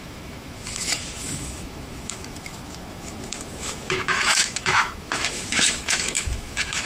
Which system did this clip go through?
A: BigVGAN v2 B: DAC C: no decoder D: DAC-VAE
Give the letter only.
D